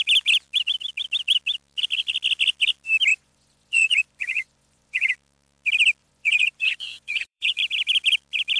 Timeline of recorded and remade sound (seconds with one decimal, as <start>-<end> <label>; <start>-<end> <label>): 0.0-3.1 recorded; 3.1-5.1 remade; 5.1-6.0 recorded; 6.0-7.6 remade; 7.6-8.6 recorded